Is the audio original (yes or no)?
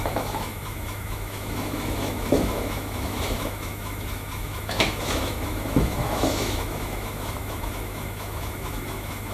no